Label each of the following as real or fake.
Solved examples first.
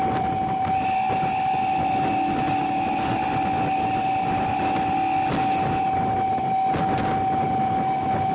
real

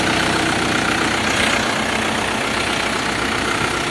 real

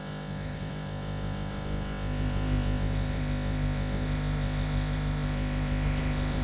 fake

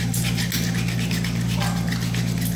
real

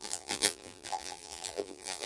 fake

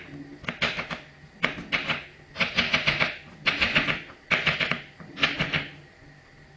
real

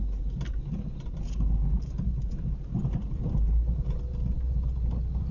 real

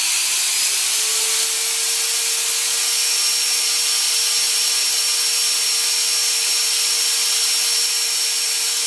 fake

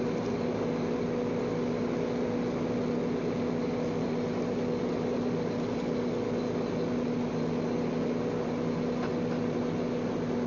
real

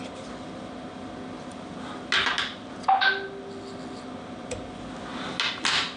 real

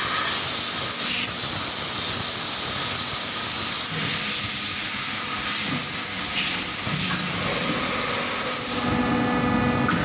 real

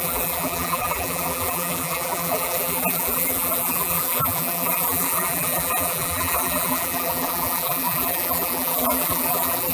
fake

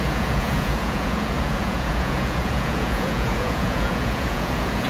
fake